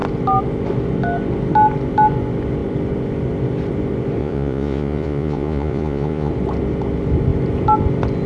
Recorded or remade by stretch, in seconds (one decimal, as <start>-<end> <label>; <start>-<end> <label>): 0.0-4.2 recorded; 4.2-6.3 remade; 6.3-8.3 recorded